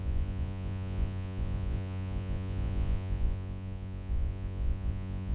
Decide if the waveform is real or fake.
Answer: fake